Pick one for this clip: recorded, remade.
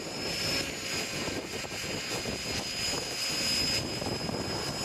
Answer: recorded